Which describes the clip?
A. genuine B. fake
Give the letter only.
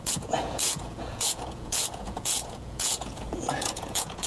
B